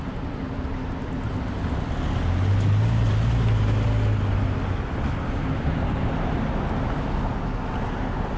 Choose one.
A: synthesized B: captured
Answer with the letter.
B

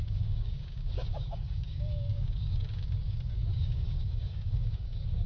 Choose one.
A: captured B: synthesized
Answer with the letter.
B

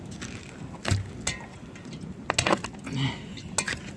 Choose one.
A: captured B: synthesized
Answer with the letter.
A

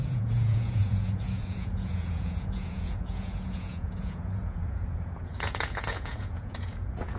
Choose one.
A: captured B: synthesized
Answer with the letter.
B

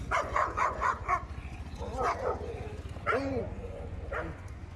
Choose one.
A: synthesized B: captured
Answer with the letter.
A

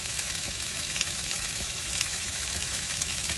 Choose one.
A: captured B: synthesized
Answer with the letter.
B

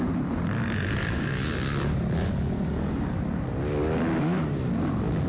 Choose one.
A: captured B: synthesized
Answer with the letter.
A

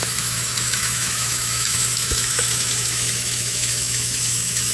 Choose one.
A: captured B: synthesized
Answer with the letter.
B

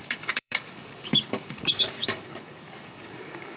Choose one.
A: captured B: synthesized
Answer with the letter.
B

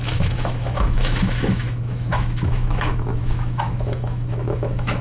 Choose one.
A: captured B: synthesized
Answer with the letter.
B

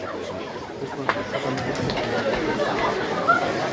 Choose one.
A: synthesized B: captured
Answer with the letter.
B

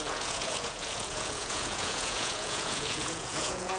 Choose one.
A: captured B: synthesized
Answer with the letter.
B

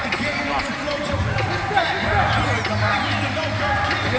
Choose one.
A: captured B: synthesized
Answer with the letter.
A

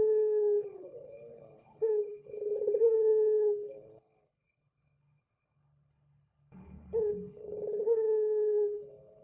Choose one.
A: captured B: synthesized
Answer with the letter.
B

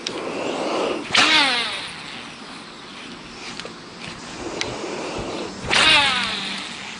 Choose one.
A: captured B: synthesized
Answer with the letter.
A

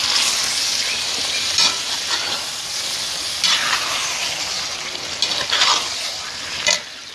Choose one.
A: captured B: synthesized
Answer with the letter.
A